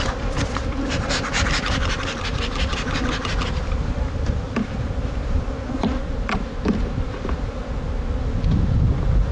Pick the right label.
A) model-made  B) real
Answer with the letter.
A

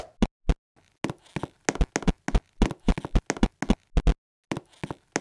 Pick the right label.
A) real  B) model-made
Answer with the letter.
A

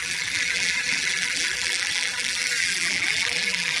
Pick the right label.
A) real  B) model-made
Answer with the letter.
B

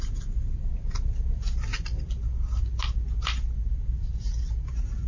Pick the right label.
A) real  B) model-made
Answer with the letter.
A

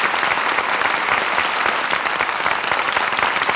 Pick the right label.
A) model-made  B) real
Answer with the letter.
B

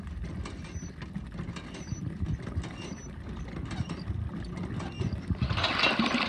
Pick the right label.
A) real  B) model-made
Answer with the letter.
A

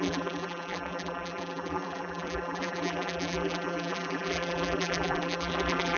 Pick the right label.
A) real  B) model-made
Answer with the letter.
B